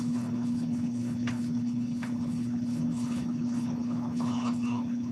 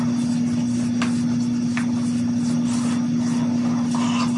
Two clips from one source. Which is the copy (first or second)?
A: first